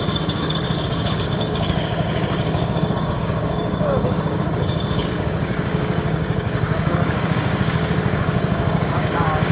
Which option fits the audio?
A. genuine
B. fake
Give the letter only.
B